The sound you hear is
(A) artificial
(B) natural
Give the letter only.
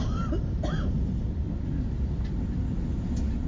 B